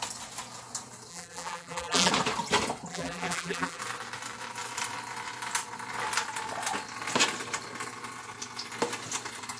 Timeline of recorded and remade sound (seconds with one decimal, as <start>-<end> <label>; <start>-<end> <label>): 0.0-1.1 recorded; 1.1-2.1 remade; 2.1-2.9 recorded; 2.9-3.8 remade; 3.8-9.6 recorded